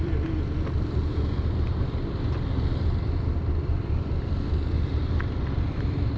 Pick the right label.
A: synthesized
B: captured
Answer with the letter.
A